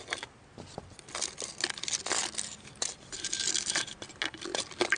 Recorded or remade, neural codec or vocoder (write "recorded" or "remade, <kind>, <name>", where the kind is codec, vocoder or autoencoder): recorded